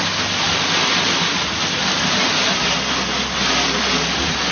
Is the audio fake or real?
real